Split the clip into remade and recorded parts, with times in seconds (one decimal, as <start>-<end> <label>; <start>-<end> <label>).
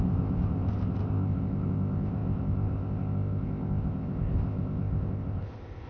0.0-5.9 remade